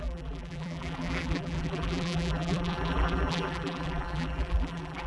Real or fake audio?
fake